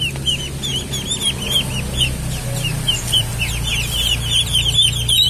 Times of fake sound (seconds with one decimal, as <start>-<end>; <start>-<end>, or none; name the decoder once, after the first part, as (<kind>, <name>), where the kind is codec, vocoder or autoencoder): none